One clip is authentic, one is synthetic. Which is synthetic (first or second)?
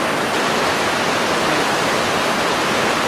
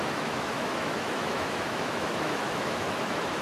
second